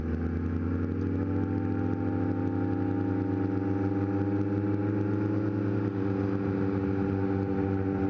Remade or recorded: recorded